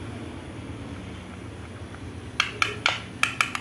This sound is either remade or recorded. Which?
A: recorded